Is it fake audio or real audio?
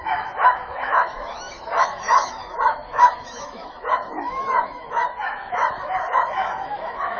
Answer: fake